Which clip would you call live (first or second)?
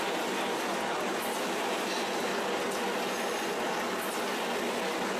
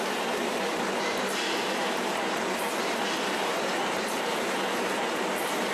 first